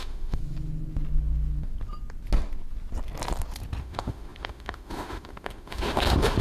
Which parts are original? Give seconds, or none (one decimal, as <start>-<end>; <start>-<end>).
0.4-3.8